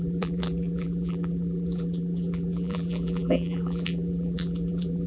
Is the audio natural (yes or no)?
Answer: no